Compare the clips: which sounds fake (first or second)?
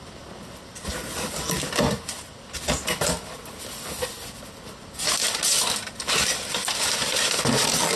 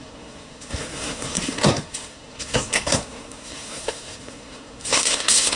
second